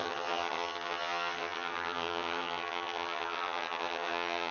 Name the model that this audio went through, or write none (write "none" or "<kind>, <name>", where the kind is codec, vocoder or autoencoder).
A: vocoder, HiFi-GAN